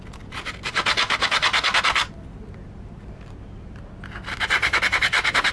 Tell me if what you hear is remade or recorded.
recorded